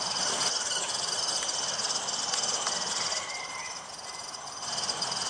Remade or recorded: recorded